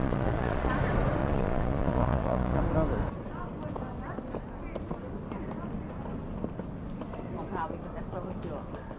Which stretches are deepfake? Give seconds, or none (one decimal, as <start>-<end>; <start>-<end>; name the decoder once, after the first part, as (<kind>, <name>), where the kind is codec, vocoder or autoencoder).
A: 0.0-0.7 (vocoder, Vocos); 1.2-2.6